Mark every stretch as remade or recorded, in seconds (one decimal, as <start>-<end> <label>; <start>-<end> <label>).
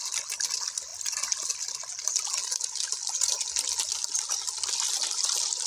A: 0.0-5.7 recorded